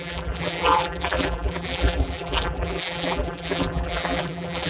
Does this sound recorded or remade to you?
remade